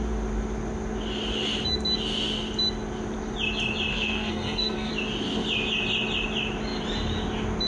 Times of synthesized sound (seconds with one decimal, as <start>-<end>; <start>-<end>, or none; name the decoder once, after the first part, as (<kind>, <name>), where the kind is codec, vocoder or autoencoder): 3.9-4.9 (codec, SNAC)

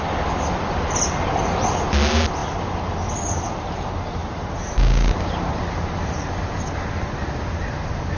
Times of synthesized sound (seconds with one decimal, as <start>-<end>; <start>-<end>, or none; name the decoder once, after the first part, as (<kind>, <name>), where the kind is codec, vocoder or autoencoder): none

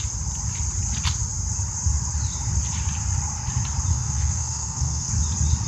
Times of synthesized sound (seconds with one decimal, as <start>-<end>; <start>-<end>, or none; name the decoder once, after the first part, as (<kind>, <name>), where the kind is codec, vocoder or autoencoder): 3.9-5.1 (codec, SNAC)